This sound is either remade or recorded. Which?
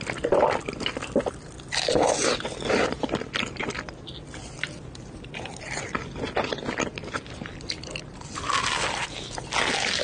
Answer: recorded